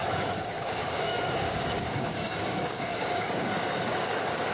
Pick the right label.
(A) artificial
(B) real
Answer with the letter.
A